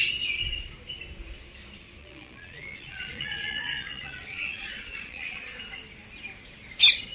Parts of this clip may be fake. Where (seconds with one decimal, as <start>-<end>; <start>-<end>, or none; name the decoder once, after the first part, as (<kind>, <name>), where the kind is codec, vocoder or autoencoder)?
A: 2.0-5.6 (vocoder, Vocos)